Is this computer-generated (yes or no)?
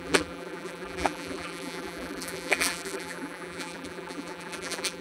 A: yes